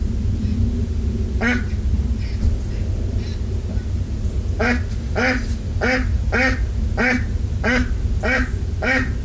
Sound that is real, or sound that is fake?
real